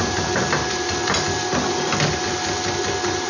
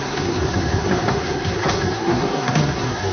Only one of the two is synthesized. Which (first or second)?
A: second